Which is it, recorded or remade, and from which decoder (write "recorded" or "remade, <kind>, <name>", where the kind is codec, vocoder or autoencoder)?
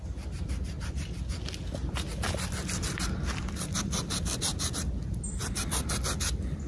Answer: recorded